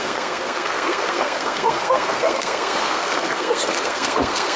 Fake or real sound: fake